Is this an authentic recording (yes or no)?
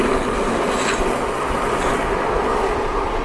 yes